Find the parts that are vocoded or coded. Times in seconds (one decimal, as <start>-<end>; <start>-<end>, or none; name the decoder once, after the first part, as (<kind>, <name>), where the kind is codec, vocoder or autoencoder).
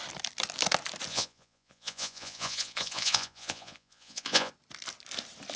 1.1-4.5 (vocoder, Vocos)